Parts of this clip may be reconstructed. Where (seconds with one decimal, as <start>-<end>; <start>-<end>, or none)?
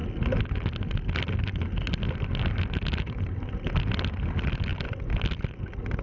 none